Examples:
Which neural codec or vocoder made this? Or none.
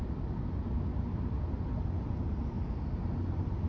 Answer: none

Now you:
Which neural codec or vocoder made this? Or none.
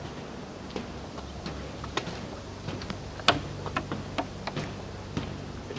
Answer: none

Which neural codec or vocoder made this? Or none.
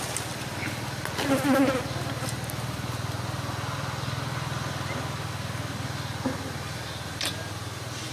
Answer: none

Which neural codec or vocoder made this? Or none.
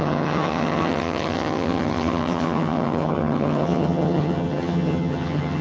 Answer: vocoder, HiFi-GAN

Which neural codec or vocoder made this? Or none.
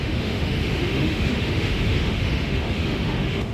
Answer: autoencoder, DAC-VAE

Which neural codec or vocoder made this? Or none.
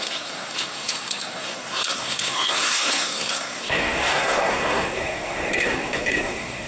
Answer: codec, SNAC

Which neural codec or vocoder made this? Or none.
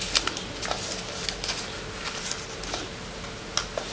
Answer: none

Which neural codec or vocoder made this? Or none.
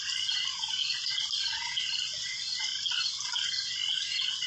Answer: none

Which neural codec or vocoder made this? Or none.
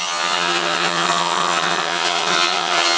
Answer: vocoder, HiFi-GAN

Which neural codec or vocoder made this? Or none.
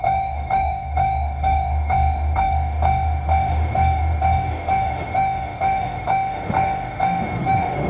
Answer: autoencoder, DAC-VAE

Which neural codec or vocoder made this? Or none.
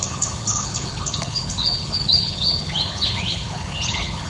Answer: codec, HILCodec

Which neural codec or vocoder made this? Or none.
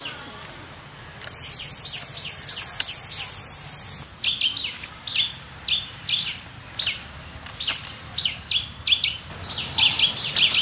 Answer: none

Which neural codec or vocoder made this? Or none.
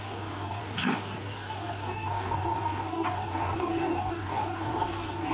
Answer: codec, DAC